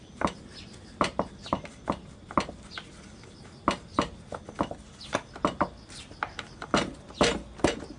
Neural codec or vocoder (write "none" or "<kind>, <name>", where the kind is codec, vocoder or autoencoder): none